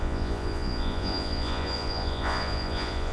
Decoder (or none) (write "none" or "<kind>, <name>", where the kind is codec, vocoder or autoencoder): vocoder, Vocos